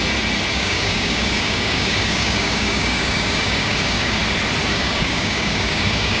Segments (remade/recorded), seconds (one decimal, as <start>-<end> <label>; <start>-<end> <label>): 0.0-0.5 recorded; 0.5-4.2 remade; 4.2-4.7 recorded; 4.7-6.2 remade